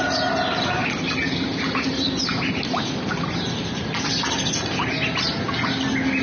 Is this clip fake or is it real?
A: real